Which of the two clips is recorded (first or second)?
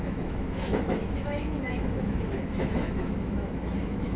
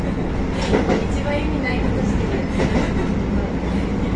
second